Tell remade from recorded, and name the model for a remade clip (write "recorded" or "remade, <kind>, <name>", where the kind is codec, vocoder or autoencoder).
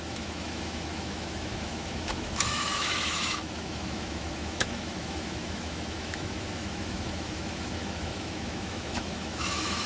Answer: remade, autoencoder, DAC-VAE